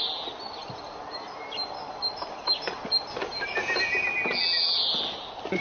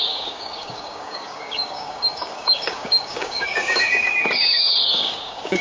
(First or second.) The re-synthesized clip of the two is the second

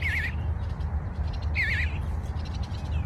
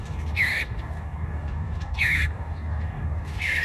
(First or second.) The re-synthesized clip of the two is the second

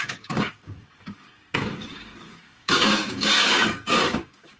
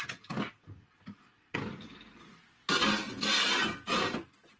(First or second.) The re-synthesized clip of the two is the first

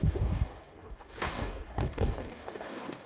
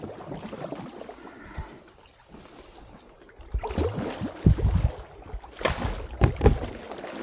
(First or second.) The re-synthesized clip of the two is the first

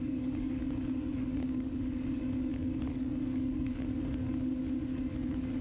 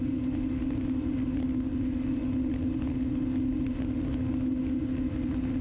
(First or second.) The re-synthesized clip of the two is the first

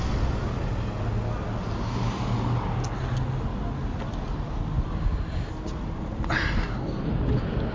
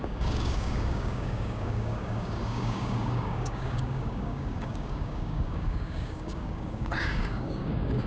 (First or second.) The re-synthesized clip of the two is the second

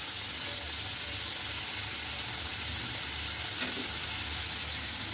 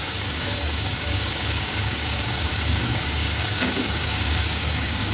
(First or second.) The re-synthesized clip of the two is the second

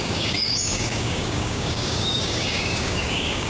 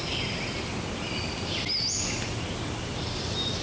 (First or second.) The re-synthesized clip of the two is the first